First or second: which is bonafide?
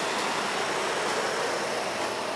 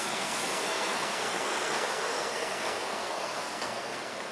first